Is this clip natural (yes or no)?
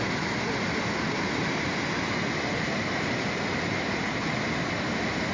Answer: yes